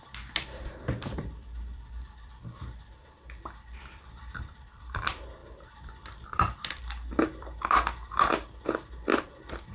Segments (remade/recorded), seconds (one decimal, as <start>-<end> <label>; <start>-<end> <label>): 0.0-9.7 remade